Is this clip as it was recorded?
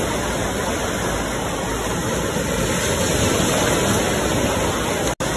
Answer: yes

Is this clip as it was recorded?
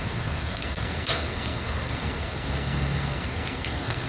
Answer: no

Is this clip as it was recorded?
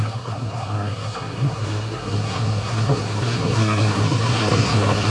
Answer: no